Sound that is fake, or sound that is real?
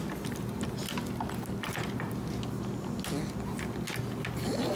real